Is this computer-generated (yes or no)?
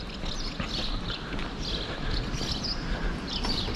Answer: no